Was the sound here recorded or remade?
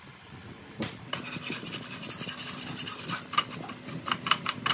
recorded